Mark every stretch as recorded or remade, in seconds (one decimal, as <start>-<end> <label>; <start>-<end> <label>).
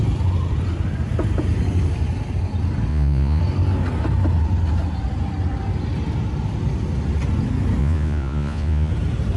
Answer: 0.0-2.9 recorded; 2.9-3.4 remade; 3.4-7.8 recorded; 7.8-8.9 remade; 8.9-9.4 recorded